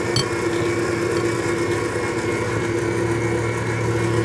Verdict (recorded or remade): recorded